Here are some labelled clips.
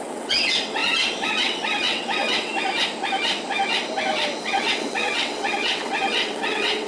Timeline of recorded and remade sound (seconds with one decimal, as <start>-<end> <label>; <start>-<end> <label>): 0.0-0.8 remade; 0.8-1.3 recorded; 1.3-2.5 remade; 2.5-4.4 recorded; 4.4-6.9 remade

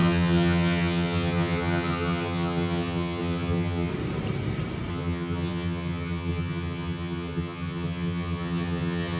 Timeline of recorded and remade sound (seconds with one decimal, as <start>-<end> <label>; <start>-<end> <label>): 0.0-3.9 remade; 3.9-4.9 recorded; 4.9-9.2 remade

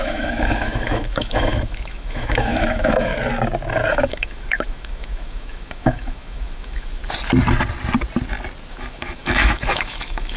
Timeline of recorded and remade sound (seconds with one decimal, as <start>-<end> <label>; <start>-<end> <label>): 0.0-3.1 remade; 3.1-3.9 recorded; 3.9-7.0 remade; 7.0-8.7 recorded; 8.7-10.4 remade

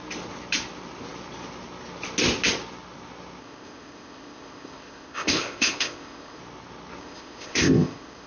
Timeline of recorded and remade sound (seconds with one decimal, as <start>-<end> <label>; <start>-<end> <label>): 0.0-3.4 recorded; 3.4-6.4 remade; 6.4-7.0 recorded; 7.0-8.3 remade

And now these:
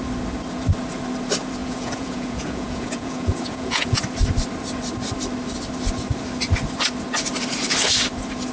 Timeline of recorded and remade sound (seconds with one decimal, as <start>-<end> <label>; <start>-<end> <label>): 0.0-1.6 recorded; 1.6-4.0 remade; 4.0-8.5 recorded

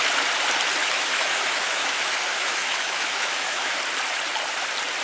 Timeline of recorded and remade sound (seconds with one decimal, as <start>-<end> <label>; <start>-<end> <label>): 0.0-0.8 recorded; 0.8-3.8 remade; 3.8-5.0 recorded

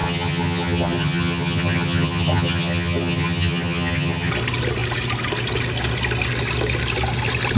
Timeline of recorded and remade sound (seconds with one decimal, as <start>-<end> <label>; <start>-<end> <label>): 0.0-4.3 remade; 4.3-7.6 recorded

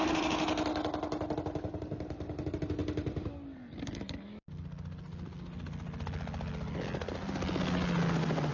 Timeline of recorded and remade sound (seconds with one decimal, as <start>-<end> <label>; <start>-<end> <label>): 0.0-8.5 recorded